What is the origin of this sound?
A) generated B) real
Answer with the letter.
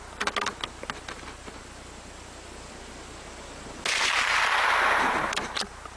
B